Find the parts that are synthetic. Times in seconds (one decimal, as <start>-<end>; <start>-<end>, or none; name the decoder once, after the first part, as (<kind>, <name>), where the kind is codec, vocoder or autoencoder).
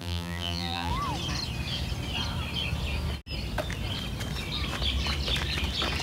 0.0-0.9 (vocoder, BigVGAN v2)